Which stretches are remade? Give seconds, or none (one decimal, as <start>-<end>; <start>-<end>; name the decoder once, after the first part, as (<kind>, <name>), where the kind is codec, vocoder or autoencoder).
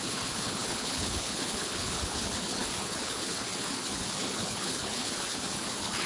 0.0-6.1 (codec, HILCodec)